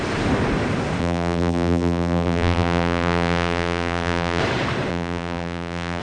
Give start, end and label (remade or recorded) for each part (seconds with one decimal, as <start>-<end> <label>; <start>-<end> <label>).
0.0-1.0 recorded; 1.0-4.4 remade; 4.4-4.9 recorded; 4.9-6.0 remade